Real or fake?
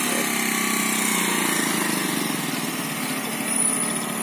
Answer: real